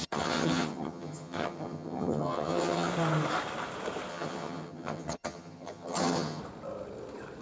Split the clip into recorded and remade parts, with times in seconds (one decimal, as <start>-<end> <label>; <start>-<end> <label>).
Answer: 0.0-2.9 remade; 2.9-4.1 recorded; 4.1-6.4 remade; 6.4-7.4 recorded